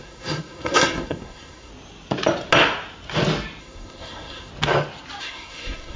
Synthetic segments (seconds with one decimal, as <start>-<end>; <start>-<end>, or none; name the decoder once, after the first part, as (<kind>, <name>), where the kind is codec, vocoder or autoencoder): 0.0-1.7 (codec, SNAC); 3.6-4.5; 5.2-6.0